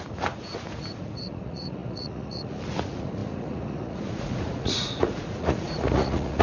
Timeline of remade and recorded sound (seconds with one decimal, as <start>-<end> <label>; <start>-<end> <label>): 0.0-6.4 remade